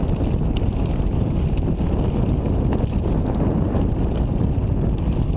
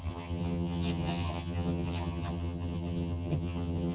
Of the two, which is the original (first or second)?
first